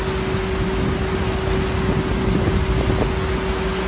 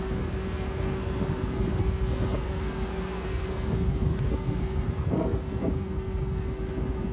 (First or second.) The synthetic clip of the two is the second